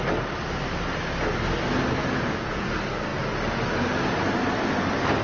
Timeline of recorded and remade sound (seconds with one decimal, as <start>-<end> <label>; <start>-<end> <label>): 0.0-2.0 recorded; 2.0-2.7 remade; 2.7-5.2 recorded